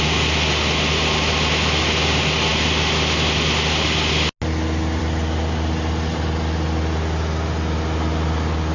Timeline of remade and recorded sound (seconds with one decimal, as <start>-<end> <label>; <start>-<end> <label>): 0.0-8.7 recorded